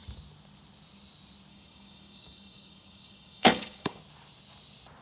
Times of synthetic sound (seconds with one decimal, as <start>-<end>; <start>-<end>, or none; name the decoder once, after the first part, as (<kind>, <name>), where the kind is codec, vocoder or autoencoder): 1.5-4.0 (codec, DAC)